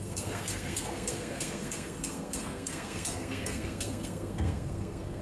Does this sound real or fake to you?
fake